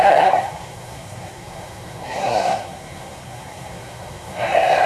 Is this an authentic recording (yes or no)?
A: no